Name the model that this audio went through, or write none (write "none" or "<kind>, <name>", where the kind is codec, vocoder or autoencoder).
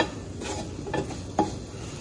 none